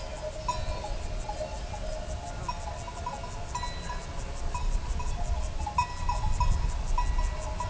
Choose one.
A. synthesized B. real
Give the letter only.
B